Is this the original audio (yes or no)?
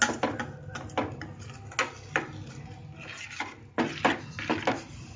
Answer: yes